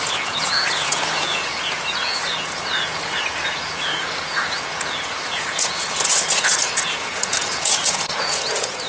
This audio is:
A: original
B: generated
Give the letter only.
B